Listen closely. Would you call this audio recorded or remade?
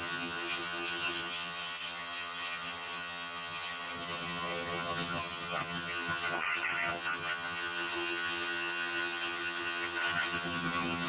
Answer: remade